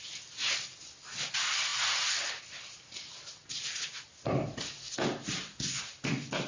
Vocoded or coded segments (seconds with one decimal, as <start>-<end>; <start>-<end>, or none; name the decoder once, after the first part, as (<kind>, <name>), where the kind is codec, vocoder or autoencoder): none